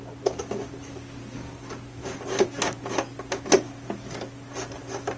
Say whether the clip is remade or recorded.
recorded